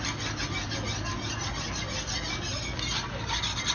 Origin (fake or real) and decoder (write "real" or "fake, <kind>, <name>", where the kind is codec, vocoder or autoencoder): real